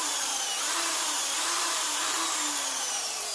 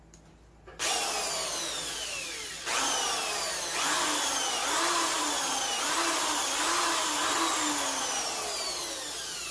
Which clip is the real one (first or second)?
second